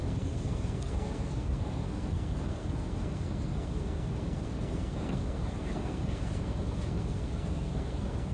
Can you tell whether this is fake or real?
fake